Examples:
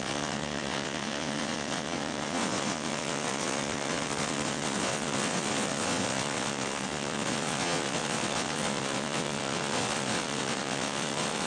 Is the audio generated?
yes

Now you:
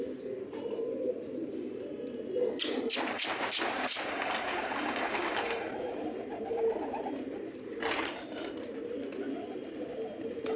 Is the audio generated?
no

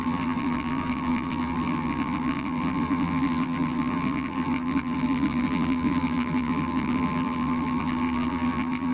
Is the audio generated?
yes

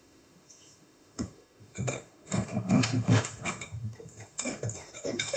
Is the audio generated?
yes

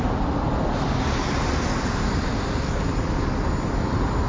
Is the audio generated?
no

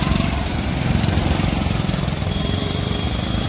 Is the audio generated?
yes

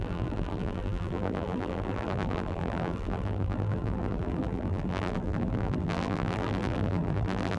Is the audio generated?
yes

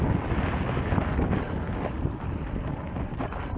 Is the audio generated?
no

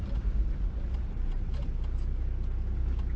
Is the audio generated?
no